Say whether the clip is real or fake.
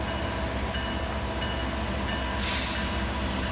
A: real